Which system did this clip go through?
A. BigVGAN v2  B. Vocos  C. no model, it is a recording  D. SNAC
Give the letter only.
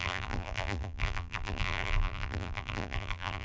A